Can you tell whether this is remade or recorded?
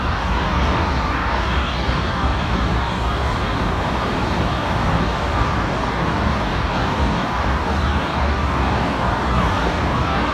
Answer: remade